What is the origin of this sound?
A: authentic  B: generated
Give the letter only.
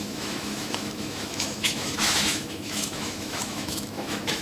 B